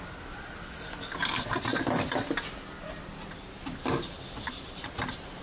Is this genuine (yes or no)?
yes